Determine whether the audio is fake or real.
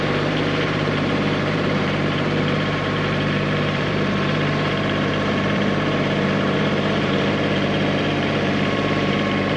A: fake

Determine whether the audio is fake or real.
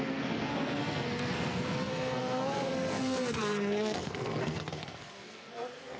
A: fake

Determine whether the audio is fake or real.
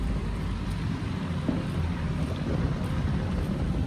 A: fake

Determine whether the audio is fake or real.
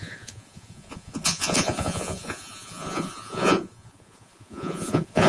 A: fake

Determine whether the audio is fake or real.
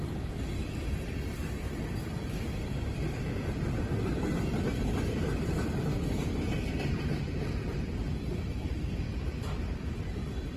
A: fake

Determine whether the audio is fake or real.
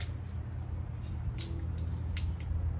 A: real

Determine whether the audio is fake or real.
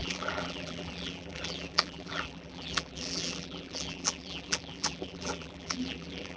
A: fake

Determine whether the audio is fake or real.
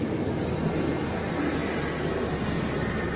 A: real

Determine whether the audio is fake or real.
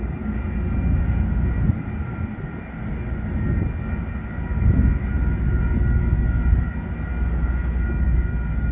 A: real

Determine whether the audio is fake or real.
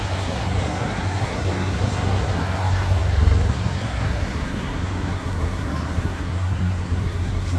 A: fake